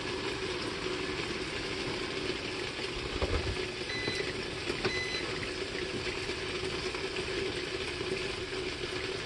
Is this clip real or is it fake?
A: real